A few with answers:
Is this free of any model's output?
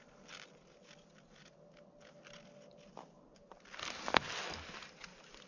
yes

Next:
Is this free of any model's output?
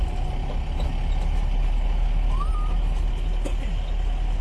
yes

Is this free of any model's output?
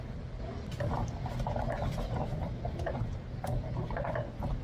yes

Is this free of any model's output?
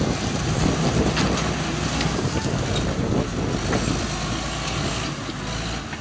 yes